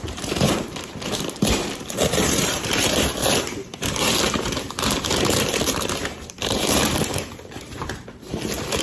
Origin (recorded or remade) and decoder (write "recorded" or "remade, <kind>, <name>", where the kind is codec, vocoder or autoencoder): remade, vocoder, BigVGAN v2